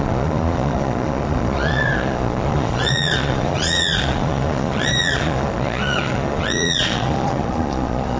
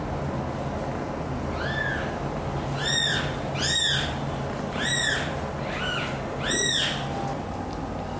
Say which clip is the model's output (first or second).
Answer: first